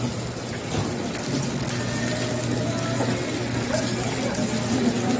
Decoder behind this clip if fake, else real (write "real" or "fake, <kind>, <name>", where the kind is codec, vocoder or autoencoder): real